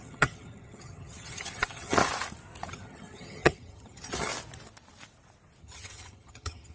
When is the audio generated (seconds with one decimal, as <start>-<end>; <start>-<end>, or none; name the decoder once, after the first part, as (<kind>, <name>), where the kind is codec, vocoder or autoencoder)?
0.0-2.0 (vocoder, HiFi-GAN); 2.7-4.3; 5.6-6.7